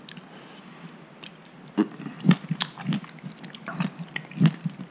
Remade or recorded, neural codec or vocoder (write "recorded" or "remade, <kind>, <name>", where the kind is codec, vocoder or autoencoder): recorded